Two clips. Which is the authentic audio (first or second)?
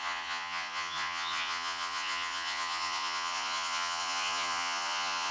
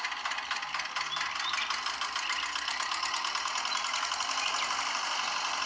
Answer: second